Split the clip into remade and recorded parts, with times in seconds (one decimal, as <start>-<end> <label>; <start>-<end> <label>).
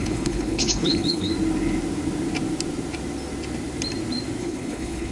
0.0-1.3 remade; 1.3-4.4 recorded; 4.4-5.1 remade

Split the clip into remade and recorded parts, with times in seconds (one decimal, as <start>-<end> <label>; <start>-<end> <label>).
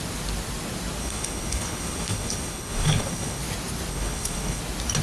0.0-1.0 recorded; 1.0-3.4 remade; 3.4-3.9 recorded; 3.9-4.6 remade; 4.6-5.0 recorded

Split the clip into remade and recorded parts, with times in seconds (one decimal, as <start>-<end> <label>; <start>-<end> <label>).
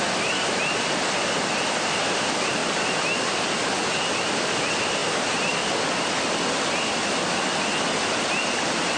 0.0-9.0 recorded